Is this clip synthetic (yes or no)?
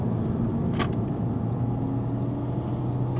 no